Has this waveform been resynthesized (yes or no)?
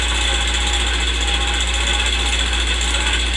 no